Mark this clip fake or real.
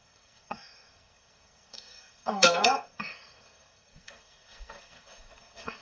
fake